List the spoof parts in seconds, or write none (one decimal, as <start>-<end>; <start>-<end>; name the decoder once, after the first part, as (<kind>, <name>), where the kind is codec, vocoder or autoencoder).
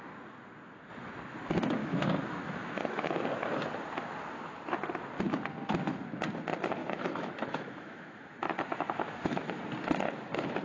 1.8-3.2 (autoencoder, DAC-VAE); 6.8-9.6